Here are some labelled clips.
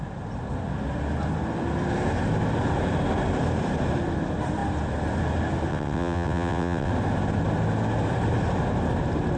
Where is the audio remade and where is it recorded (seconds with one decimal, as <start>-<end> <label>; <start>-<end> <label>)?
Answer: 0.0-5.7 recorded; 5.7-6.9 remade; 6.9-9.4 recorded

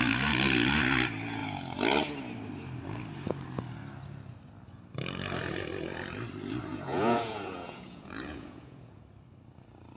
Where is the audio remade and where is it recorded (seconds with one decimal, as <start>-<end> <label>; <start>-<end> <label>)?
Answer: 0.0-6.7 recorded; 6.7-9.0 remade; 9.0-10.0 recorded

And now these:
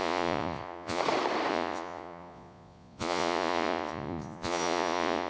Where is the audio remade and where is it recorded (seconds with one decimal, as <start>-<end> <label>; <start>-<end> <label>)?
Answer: 0.0-1.0 remade; 1.0-1.5 recorded; 1.5-5.3 remade

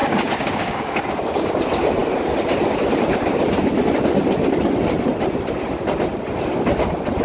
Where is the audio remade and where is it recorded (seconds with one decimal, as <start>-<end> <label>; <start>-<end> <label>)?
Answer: 0.0-1.6 remade; 1.6-7.2 recorded

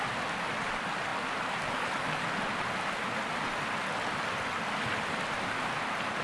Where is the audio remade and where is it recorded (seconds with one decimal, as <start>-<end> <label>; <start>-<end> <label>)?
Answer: 0.0-6.2 recorded

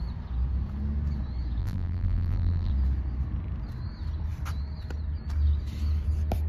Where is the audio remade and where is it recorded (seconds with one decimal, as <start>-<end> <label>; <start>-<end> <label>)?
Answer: 0.0-1.6 recorded; 1.6-2.7 remade; 2.7-6.5 recorded

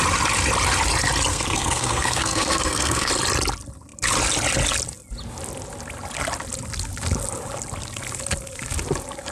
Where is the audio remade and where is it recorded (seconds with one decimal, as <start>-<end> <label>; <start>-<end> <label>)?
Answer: 0.0-1.3 recorded; 1.3-3.1 remade; 3.1-9.3 recorded